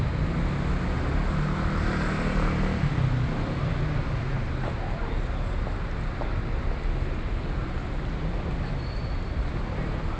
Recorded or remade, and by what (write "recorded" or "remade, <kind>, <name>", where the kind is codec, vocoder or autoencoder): recorded